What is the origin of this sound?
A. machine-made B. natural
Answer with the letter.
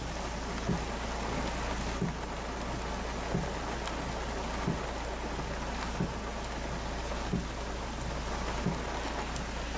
B